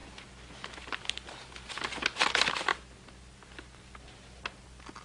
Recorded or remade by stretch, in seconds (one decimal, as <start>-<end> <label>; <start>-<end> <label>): 0.0-5.0 recorded